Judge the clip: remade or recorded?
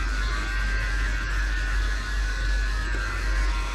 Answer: remade